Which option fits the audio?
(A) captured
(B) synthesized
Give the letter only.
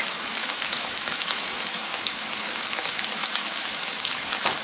B